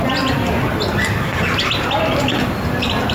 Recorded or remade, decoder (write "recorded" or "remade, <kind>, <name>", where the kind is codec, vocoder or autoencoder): recorded